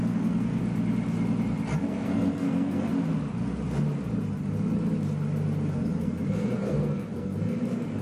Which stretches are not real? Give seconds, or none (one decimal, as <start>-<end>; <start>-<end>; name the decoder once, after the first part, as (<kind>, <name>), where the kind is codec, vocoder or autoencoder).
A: 0.0-0.6 (codec, SNAC); 1.8-2.9; 6.0-8.0